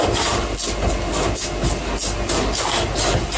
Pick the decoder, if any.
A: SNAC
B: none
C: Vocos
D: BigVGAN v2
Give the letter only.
B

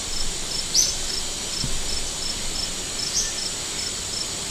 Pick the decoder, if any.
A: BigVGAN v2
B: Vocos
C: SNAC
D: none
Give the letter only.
D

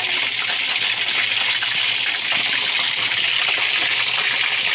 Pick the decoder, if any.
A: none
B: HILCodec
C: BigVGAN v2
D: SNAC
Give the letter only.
A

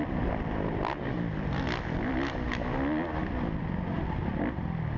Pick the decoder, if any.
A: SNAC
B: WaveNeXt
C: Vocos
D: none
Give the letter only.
D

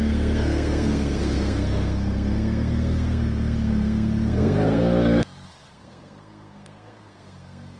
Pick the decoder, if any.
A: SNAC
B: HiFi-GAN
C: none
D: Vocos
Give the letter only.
A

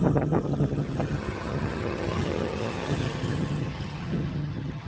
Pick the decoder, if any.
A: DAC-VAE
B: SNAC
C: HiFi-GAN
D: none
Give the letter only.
C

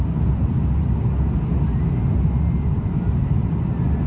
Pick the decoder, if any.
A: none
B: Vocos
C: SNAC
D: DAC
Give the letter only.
A